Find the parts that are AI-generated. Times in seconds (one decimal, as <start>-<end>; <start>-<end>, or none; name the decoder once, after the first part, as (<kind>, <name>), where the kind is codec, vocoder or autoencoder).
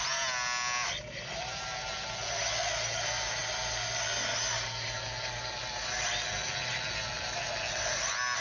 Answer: none